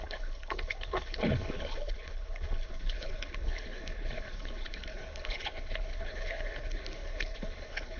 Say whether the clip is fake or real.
fake